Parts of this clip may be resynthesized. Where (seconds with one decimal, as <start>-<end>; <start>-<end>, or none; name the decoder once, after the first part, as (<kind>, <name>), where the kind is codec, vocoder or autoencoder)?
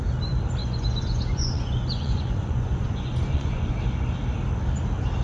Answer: 0.6-3.7 (vocoder, Vocos)